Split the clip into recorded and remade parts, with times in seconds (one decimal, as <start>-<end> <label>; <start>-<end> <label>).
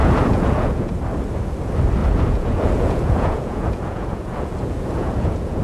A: 0.0-0.9 remade; 0.9-2.0 recorded; 2.0-5.6 remade